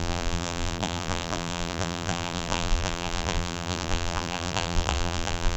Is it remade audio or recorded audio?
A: remade